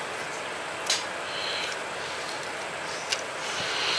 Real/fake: real